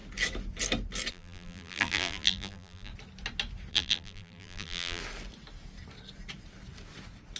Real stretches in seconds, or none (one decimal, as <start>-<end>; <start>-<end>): 0.0-1.1; 2.9-3.7; 5.0-7.4